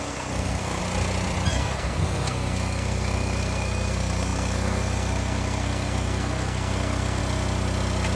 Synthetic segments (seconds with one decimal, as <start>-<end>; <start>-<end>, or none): 0.0-0.8; 1.5-7.2